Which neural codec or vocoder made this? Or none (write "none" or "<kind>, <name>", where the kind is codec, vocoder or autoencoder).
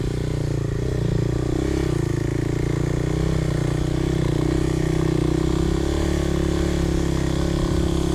none